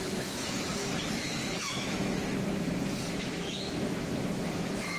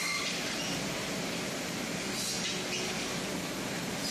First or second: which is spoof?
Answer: first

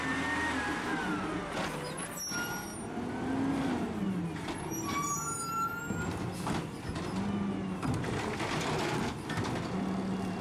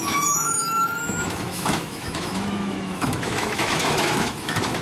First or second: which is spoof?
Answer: second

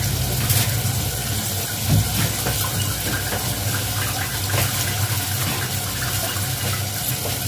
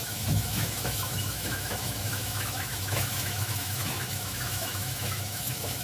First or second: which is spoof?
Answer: second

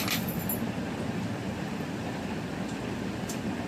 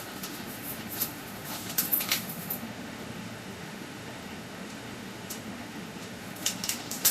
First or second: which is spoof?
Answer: second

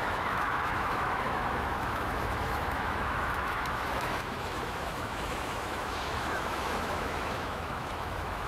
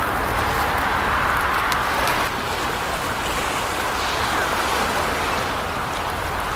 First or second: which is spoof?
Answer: first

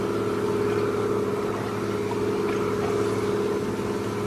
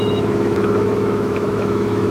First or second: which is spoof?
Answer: second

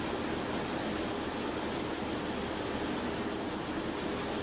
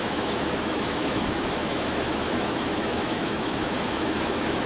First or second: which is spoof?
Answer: second